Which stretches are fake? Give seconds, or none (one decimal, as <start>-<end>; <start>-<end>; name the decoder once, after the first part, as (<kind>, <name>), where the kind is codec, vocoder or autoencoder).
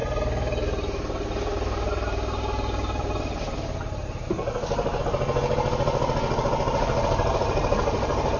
0.0-5.0 (vocoder, BigVGAN v2)